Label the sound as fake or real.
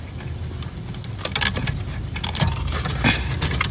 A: real